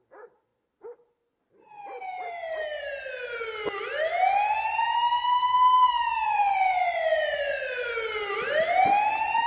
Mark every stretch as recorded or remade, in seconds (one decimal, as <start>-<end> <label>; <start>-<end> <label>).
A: 0.0-9.5 recorded

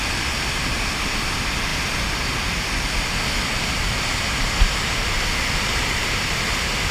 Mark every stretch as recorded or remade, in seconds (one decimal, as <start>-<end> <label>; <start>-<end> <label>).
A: 0.0-6.9 recorded

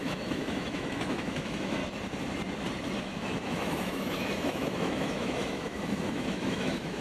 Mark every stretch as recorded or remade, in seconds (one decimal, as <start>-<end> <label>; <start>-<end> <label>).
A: 0.0-1.8 remade; 1.8-3.0 recorded; 3.0-7.0 remade

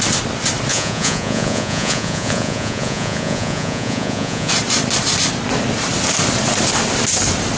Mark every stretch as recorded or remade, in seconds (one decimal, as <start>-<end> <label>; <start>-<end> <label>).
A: 0.0-0.7 recorded; 0.7-4.5 remade; 4.5-7.6 recorded

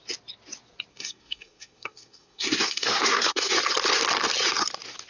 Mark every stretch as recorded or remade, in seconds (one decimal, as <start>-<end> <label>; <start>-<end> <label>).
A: 0.0-0.9 recorded; 0.9-3.5 remade; 3.5-5.1 recorded

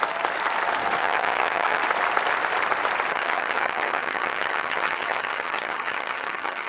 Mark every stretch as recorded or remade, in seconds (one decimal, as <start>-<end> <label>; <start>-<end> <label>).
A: 0.0-1.0 recorded; 1.0-1.8 remade; 1.8-3.1 recorded; 3.1-6.7 remade

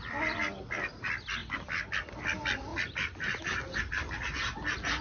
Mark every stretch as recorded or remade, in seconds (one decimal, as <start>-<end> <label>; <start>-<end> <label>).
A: 0.0-5.0 recorded